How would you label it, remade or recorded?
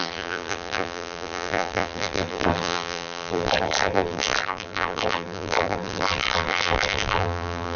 remade